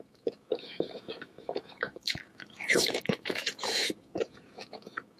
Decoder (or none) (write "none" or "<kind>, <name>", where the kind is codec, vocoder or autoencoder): autoencoder, DAC-VAE